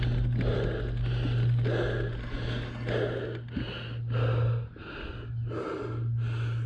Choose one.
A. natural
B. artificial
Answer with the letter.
A